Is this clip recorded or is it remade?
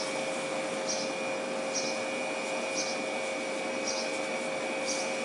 recorded